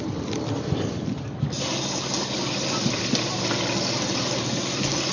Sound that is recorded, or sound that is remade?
recorded